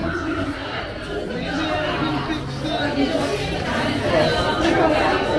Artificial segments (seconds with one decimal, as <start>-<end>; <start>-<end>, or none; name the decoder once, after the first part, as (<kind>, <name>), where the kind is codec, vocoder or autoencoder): 0.0-0.8 (codec, SNAC)